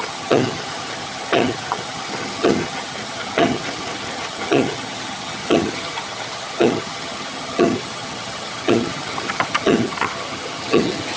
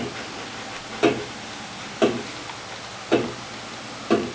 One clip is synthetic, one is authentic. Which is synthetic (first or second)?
first